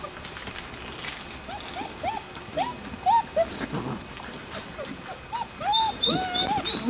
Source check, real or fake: real